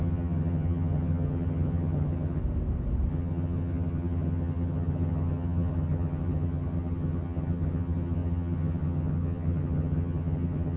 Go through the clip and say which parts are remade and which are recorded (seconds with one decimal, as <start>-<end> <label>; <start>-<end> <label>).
0.0-2.4 remade; 2.4-3.1 recorded; 3.1-10.8 remade